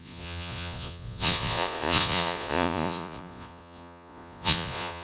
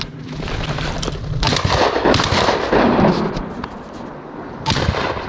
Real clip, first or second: second